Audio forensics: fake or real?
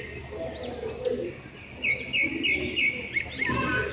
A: real